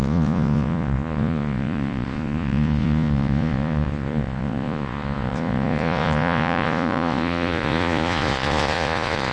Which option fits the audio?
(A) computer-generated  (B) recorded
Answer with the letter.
A